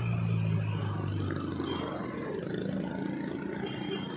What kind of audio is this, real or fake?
real